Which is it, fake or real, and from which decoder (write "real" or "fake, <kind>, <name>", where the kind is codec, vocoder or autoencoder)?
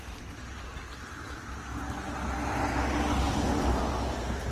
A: real